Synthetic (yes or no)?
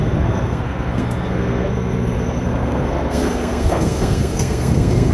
yes